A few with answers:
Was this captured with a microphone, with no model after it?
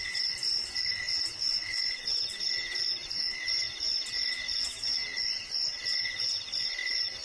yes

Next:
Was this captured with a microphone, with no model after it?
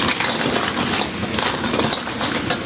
yes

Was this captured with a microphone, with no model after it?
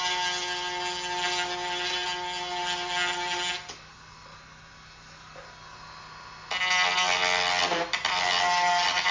yes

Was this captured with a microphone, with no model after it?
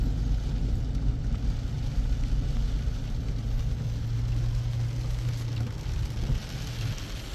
yes